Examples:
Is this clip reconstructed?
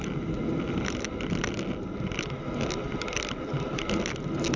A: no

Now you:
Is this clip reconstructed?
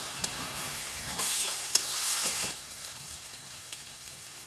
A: yes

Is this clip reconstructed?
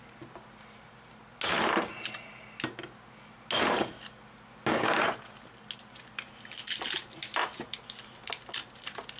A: no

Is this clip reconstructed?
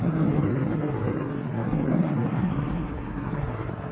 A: yes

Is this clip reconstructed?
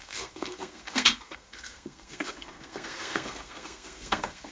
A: yes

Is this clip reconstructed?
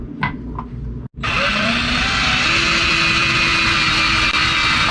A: no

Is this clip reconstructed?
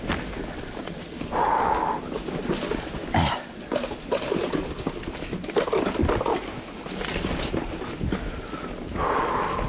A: no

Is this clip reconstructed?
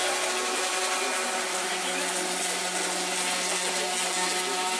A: no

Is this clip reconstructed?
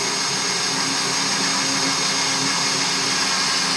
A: no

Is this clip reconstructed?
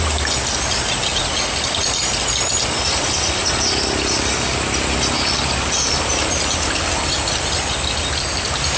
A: no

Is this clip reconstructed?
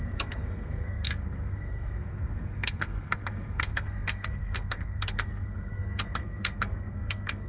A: yes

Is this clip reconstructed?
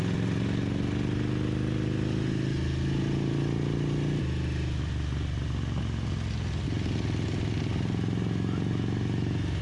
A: no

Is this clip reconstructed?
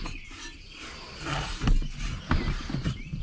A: no